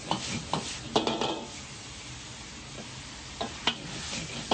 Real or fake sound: real